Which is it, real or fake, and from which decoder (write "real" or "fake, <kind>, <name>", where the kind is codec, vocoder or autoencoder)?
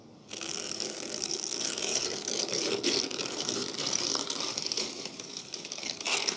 fake, codec, DAC